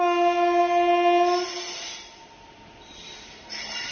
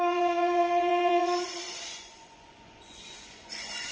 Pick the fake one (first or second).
second